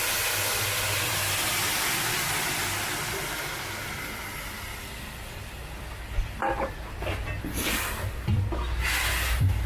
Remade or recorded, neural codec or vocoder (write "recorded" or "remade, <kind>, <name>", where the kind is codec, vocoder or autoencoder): recorded